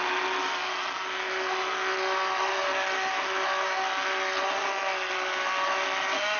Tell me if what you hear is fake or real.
real